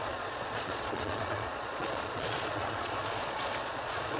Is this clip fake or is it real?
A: fake